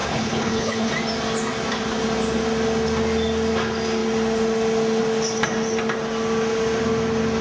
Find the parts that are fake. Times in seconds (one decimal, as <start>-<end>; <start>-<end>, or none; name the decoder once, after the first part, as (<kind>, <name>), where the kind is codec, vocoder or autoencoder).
0.0-0.9 (codec, HILCodec)